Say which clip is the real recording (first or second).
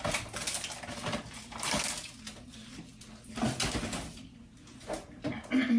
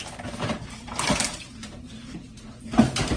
first